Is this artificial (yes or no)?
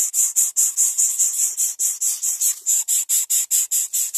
no